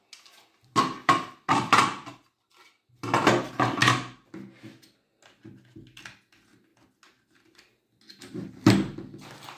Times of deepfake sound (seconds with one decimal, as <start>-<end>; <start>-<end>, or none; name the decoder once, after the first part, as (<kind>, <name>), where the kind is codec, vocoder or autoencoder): 1.0-2.8 (vocoder, BigVGAN v2)